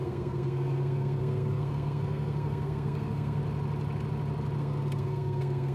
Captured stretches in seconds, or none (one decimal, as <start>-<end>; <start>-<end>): 3.4-4.6